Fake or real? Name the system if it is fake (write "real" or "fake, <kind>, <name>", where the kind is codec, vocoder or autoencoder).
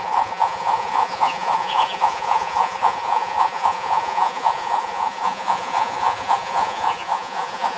fake, vocoder, Vocos